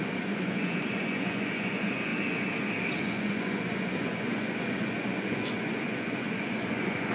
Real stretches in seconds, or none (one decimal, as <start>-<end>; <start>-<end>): 2.1-3.0